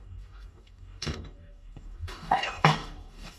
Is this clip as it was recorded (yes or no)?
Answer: no